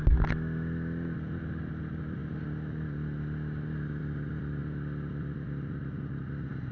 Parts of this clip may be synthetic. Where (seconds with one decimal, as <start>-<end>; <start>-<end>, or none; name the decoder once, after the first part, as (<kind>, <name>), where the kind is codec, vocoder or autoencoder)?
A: none